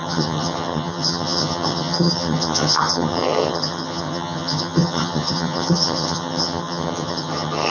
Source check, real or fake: fake